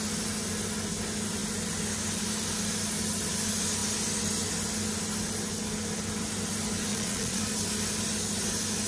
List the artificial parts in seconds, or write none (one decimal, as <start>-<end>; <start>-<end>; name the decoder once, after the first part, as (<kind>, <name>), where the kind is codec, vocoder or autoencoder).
6.9-7.4 (vocoder, Vocos)